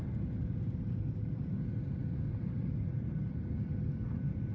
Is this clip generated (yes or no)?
no